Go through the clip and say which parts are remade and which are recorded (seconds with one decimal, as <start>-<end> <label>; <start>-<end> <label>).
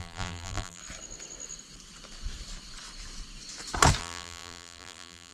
0.0-0.8 remade; 0.8-4.0 recorded; 4.0-5.3 remade